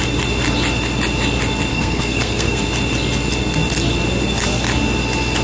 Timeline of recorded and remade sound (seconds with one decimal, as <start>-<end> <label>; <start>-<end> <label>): 0.0-1.7 recorded; 1.7-2.6 remade; 2.6-5.4 recorded

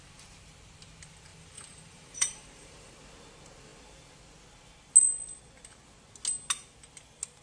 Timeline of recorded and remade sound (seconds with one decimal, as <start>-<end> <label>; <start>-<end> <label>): 0.0-1.3 recorded; 1.3-2.9 remade; 2.9-7.4 recorded

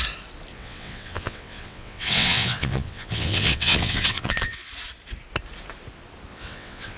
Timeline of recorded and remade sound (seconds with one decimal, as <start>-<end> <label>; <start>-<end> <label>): 0.0-0.5 recorded; 0.5-4.7 remade; 4.7-6.3 recorded; 6.3-7.0 remade

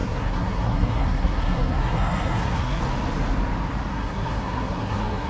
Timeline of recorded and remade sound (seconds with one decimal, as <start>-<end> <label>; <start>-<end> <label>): 0.0-2.8 remade; 2.8-3.9 recorded; 3.9-5.3 remade